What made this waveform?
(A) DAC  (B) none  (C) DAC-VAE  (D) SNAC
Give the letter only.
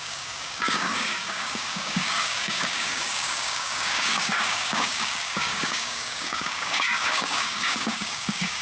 A